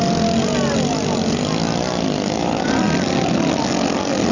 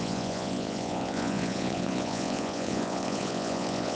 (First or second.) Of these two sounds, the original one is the first